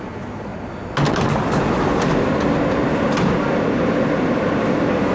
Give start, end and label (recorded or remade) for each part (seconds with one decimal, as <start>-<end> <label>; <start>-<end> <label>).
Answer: 0.0-5.1 recorded